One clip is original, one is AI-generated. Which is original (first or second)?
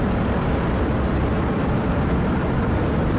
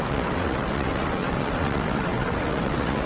first